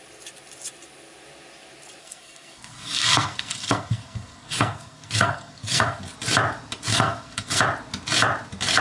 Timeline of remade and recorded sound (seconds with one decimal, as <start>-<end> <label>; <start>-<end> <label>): 0.0-2.0 recorded; 2.0-6.0 remade; 6.0-6.9 recorded; 6.9-7.6 remade; 7.6-8.8 recorded